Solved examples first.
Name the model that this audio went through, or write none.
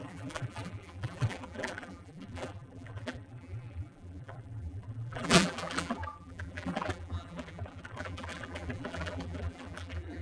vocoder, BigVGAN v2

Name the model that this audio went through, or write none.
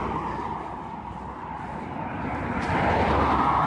none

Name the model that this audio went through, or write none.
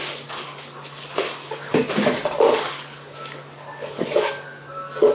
codec, DAC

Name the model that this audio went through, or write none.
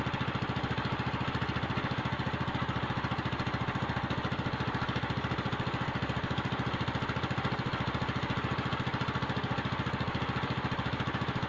none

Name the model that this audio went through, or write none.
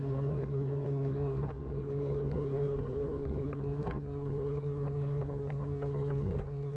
codec, SNAC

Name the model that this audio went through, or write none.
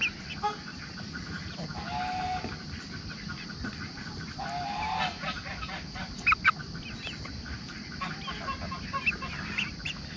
none